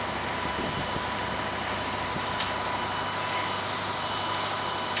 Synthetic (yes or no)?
no